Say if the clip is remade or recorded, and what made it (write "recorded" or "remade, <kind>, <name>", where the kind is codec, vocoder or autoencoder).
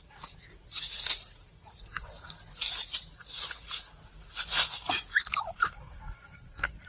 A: remade, vocoder, Vocos